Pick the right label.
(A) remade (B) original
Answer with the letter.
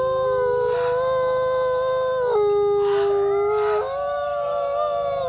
B